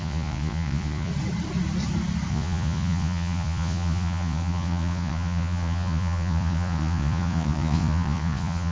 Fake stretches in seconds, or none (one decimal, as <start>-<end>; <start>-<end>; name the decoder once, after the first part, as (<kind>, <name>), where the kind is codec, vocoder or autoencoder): 0.0-1.1 (vocoder, Vocos); 2.3-8.7